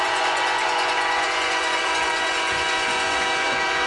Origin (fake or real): fake